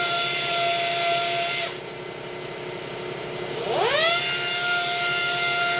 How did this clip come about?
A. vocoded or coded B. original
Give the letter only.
B